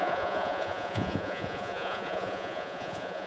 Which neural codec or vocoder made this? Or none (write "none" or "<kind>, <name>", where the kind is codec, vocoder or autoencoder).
vocoder, Vocos